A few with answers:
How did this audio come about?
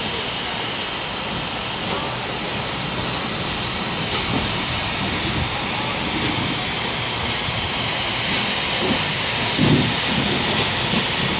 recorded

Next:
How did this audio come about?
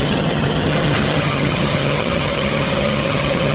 remade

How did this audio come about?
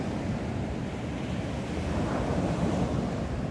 recorded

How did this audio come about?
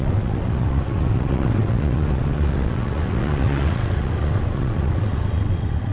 remade